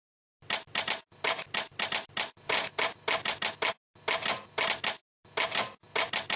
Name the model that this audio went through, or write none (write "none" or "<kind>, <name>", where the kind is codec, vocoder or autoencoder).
none